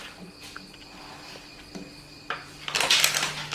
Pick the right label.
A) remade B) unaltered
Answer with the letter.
B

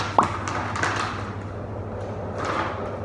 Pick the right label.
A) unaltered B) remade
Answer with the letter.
A